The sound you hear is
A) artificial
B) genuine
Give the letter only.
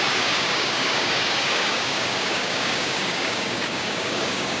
A